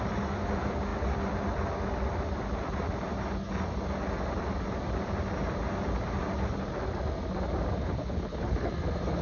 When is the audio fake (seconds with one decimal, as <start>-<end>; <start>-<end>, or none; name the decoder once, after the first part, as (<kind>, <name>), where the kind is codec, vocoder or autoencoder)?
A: 7.8-8.7 (codec, HILCodec)